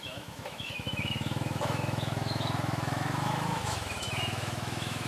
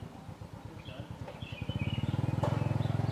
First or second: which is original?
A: second